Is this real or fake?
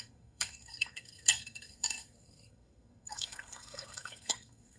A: fake